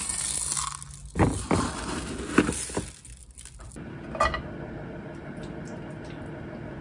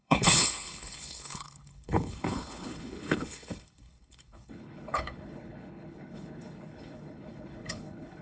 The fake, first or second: second